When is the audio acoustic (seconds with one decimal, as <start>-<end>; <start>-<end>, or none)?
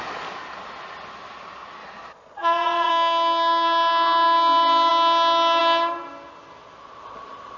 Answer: 0.0-1.8; 2.9-7.6